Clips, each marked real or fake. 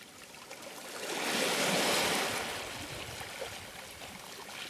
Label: real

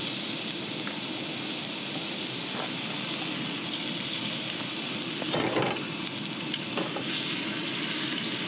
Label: real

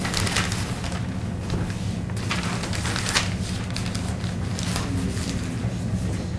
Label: real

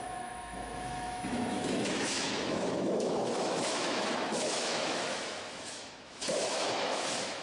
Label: fake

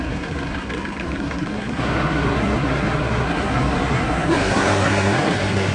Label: fake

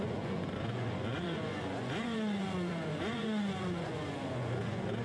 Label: fake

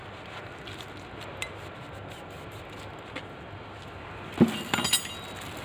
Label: real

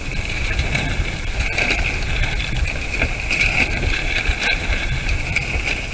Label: fake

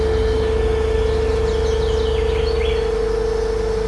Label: real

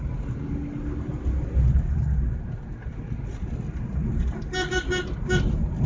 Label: real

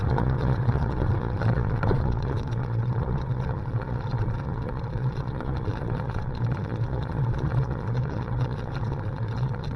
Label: fake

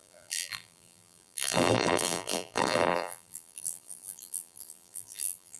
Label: fake